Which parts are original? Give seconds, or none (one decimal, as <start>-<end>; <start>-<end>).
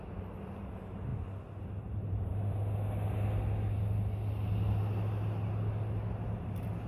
1.1-1.8; 2.3-6.4